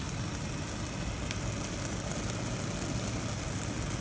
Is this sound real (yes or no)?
yes